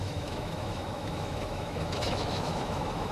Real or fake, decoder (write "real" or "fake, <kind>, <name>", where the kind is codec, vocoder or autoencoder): fake, autoencoder, DAC-VAE